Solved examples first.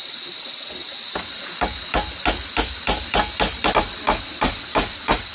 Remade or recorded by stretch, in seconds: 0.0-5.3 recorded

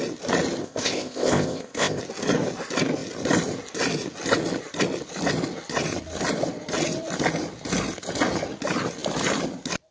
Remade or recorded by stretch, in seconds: 0.0-0.6 recorded; 0.6-2.0 remade; 2.0-9.9 recorded

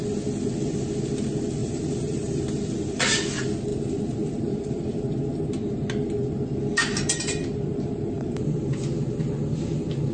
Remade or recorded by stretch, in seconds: 0.0-1.6 recorded; 1.6-2.4 remade; 2.4-3.7 recorded; 3.7-5.1 remade; 5.1-6.8 recorded; 6.8-8.8 remade; 8.8-10.1 recorded

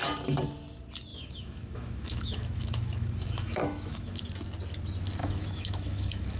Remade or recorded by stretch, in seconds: 0.0-1.1 recorded; 1.1-4.2 remade; 4.2-5.2 recorded; 5.2-6.4 remade

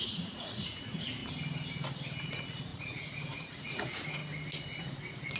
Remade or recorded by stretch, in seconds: 0.0-1.2 remade; 1.2-2.2 recorded; 2.2-4.2 remade; 4.2-4.8 recorded; 4.8-5.4 remade

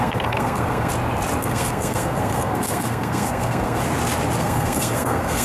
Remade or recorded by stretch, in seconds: 0.0-0.9 remade; 0.9-1.4 recorded; 1.4-3.8 remade; 3.8-4.4 recorded; 4.4-5.4 remade

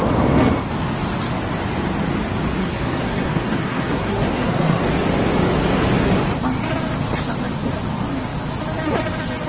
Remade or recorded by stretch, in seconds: 0.0-2.6 recorded; 2.6-4.8 remade; 4.8-9.5 recorded